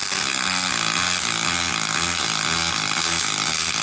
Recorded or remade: recorded